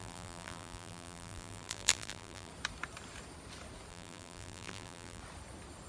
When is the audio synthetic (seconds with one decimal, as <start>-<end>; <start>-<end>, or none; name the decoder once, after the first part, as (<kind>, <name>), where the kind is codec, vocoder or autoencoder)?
0.0-2.5 (vocoder, BigVGAN v2); 3.9-5.2